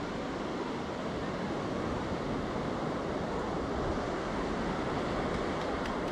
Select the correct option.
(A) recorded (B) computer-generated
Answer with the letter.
A